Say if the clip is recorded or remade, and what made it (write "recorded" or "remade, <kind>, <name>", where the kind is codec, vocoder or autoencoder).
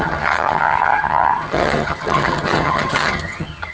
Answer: remade, vocoder, HiFi-GAN